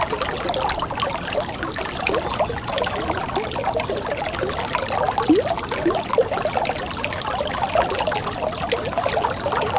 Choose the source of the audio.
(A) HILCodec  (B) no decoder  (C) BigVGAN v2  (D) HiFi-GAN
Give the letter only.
B